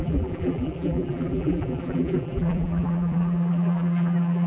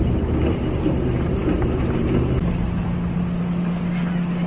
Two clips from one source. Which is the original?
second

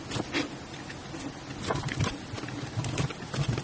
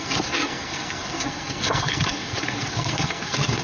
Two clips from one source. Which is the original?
first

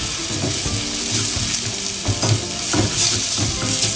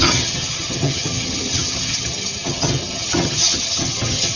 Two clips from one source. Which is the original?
first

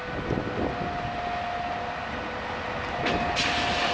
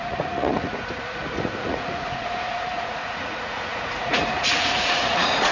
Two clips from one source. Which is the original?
first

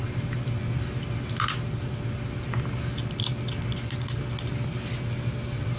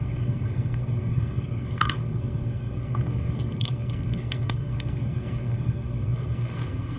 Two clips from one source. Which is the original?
first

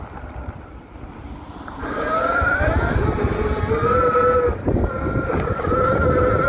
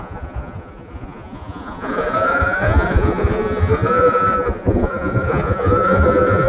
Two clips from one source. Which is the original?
first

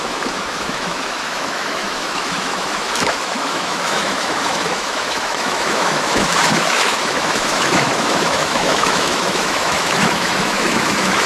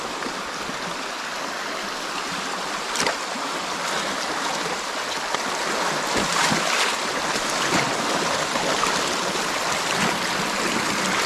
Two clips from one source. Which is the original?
second